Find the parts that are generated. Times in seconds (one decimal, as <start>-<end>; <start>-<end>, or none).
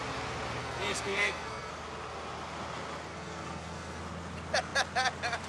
0.6-1.7; 3.1-4.0